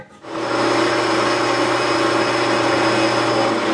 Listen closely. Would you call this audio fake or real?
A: real